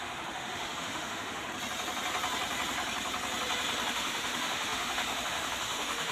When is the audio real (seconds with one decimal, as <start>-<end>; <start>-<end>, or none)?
1.5-3.9